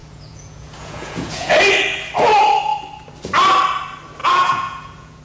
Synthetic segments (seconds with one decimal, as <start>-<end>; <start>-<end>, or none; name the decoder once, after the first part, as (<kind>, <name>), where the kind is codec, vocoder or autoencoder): 0.0-1.5 (vocoder, Vocos); 4.2-5.2